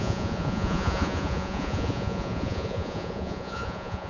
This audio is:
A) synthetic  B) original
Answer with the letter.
A